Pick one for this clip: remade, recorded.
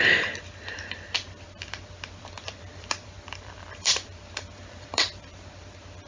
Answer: remade